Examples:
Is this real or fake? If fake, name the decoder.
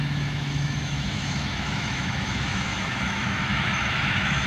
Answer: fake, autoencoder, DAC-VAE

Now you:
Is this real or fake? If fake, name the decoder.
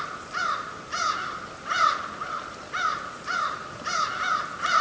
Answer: real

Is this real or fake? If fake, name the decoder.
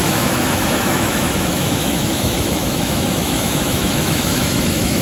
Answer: fake, autoencoder, DAC-VAE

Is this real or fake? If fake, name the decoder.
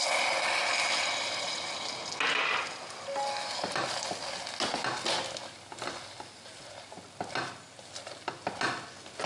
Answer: real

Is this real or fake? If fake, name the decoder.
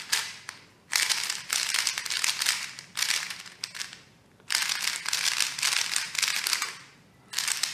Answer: real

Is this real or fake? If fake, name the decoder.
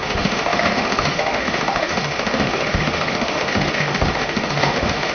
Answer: fake, autoencoder, DAC-VAE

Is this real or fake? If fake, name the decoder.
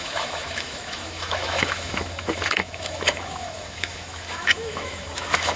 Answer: fake, autoencoder, DAC-VAE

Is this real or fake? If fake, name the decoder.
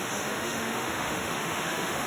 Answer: fake, autoencoder, DAC-VAE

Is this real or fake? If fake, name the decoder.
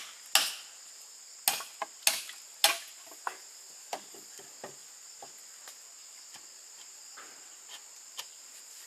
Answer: real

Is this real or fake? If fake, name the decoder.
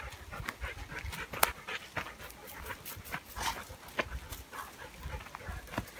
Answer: real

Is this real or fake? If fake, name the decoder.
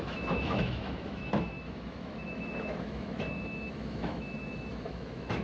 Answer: fake, autoencoder, DAC-VAE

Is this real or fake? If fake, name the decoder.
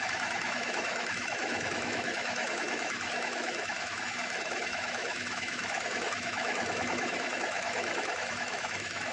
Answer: fake, autoencoder, DAC-VAE